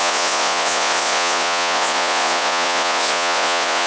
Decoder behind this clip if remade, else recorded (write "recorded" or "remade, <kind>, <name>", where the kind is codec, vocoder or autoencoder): remade, vocoder, Vocos